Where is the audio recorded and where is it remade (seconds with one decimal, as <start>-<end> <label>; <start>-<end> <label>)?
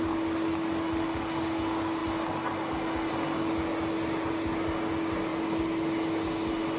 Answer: 0.0-6.8 recorded